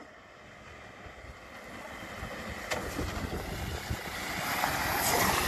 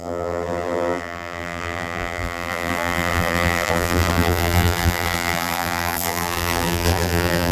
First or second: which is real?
first